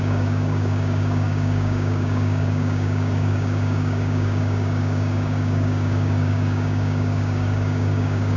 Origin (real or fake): fake